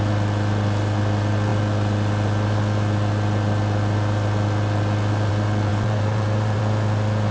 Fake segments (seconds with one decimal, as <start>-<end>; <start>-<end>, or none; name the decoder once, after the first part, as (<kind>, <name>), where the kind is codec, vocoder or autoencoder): 5.7-6.6 (vocoder, BigVGAN v2)